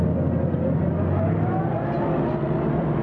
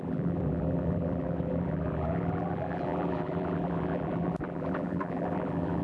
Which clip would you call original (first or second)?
first